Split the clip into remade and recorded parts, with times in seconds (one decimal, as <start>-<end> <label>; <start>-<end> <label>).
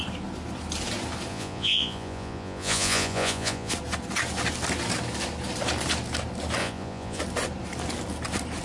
0.0-1.3 recorded; 1.3-3.7 remade; 3.7-6.6 recorded; 6.6-7.2 remade; 7.2-8.6 recorded